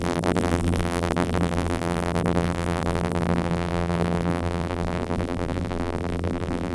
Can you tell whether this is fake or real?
fake